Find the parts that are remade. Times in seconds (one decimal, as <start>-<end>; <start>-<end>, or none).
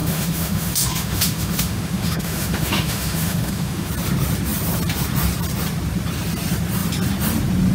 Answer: 0.0-3.9